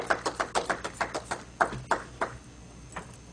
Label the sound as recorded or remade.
recorded